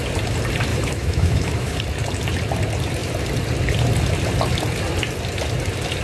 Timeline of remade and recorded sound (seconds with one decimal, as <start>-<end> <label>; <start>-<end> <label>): 0.0-0.7 recorded; 0.7-1.8 remade; 1.8-6.0 recorded